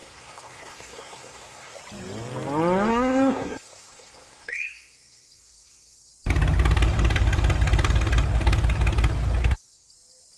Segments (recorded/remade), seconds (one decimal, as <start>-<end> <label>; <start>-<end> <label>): 0.0-1.8 remade; 1.8-2.9 recorded; 2.9-6.1 remade; 6.1-9.4 recorded; 9.4-9.9 remade; 9.9-10.4 recorded